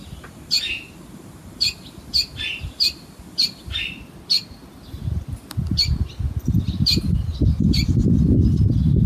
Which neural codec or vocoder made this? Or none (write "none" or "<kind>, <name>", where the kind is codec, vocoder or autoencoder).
none